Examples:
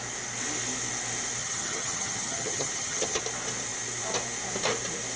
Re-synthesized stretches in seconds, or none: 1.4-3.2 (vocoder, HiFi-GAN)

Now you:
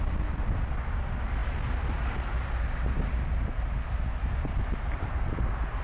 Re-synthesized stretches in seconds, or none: none

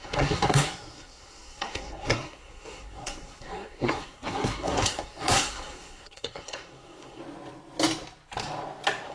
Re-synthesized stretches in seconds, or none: 0.0-7.2 (codec, SNAC)

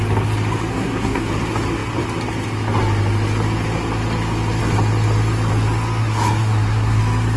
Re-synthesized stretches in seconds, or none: 0.7-1.3 (codec, SNAC); 6.0-7.0

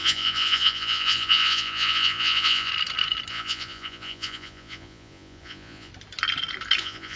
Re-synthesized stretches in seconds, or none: 0.0-2.7 (vocoder, Vocos); 3.3-5.9; 6.8-7.2

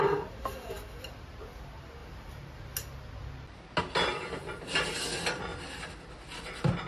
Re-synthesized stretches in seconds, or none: none

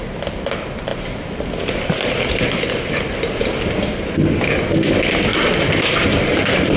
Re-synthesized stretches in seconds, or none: 5.3-6.8 (vocoder, BigVGAN v2)